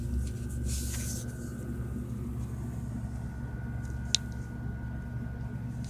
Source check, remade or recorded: recorded